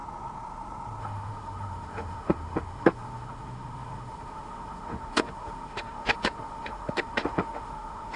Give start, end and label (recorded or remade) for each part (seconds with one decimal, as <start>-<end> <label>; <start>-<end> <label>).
0.0-1.0 recorded; 1.0-8.2 remade